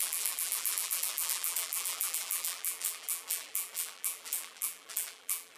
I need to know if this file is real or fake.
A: fake